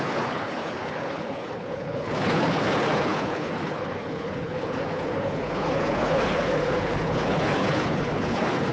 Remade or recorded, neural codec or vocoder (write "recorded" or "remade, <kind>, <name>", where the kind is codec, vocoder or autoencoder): remade, codec, HILCodec